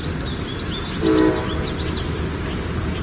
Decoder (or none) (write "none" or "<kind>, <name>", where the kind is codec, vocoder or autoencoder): none